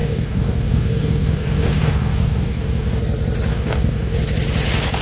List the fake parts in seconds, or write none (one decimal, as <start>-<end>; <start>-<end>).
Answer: 0.0-3.0; 3.5-4.2